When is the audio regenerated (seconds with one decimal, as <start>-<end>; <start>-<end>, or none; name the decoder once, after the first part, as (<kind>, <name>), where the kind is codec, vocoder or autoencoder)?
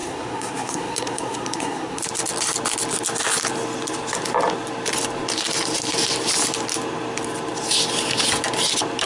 0.0-2.0 (codec, SNAC)